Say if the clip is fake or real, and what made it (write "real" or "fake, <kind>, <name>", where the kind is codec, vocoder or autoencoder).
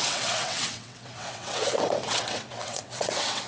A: fake, vocoder, WaveNeXt